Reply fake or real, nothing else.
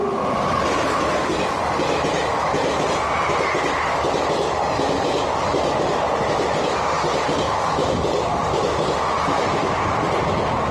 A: real